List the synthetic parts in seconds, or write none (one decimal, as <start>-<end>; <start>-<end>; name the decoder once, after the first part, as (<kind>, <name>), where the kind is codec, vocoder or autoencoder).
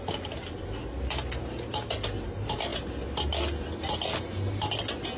none